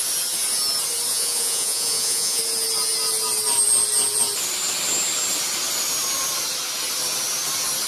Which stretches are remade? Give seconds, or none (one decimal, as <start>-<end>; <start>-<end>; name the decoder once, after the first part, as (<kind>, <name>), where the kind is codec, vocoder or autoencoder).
1.1-2.4 (vocoder, Vocos)